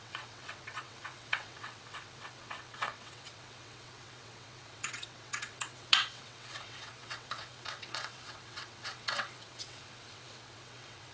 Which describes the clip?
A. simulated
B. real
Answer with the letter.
A